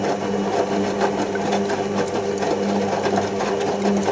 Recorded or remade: recorded